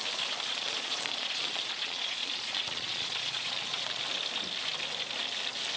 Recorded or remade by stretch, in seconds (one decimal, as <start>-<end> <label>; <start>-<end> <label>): 0.0-0.5 recorded; 0.5-4.0 remade; 4.0-5.8 recorded